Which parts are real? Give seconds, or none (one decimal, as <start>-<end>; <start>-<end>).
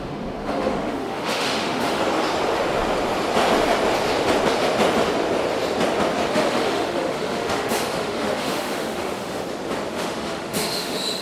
2.0-6.3; 9.4-9.9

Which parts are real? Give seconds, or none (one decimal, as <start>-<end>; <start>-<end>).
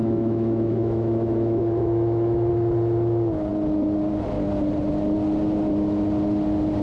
2.5-6.8